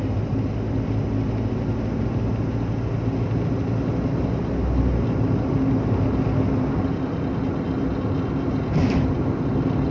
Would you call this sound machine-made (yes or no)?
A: no